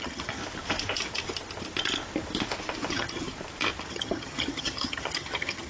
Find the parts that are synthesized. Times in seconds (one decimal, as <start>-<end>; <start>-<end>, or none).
0.0-0.4; 2.9-3.3; 3.9-5.7